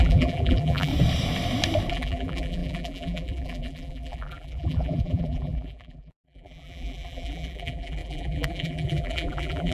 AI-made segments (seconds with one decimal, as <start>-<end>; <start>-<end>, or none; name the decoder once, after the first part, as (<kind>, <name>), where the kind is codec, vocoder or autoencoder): 0.0-0.9 (vocoder, BigVGAN v2); 1.9-9.7